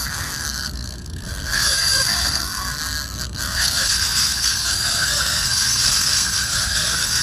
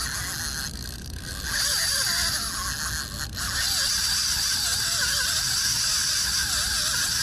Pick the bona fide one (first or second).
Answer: second